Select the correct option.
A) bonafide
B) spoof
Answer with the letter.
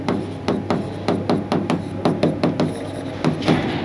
A